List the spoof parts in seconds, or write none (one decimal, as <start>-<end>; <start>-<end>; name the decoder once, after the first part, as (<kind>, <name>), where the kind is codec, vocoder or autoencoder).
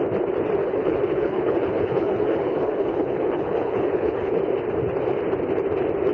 0.6-4.3 (codec, HILCodec)